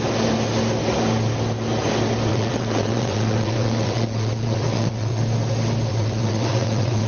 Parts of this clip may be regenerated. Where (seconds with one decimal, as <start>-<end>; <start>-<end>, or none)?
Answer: 2.3-5.2; 5.9-7.1